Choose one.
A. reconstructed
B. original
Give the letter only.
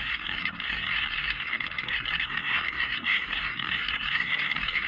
A